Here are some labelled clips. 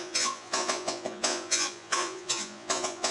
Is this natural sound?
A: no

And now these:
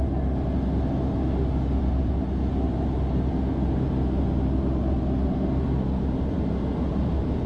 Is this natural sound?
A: yes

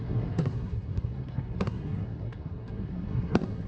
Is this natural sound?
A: no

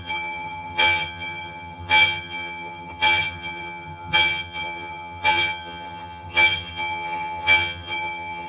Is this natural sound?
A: no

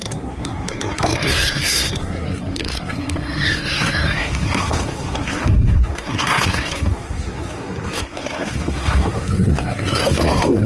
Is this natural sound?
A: no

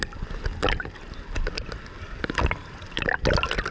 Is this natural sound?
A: yes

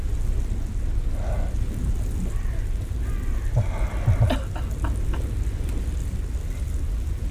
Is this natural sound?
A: yes